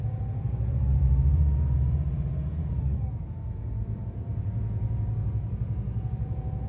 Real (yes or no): no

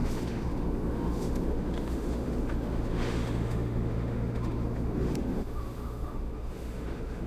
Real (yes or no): no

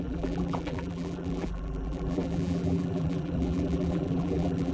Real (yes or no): no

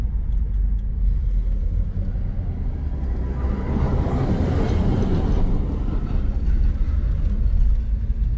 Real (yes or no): yes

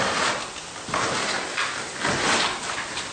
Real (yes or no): yes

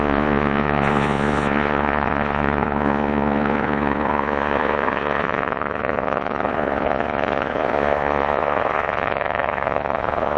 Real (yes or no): no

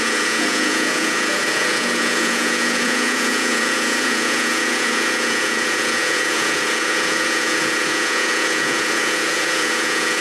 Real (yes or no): no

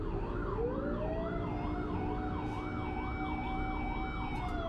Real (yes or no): yes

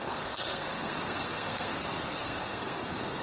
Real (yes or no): no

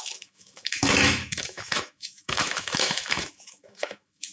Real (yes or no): no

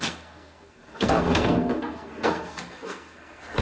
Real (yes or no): no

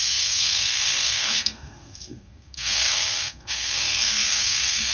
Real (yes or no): no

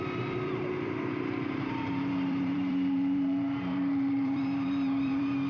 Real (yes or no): no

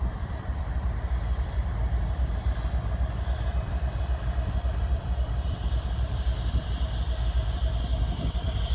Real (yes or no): no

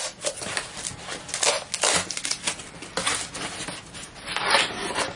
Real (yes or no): yes